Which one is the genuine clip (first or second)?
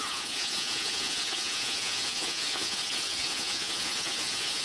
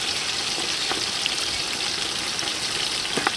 second